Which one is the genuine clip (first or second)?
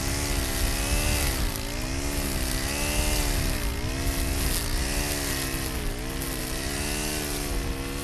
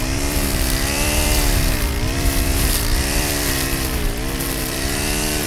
first